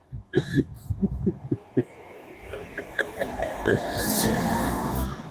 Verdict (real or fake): fake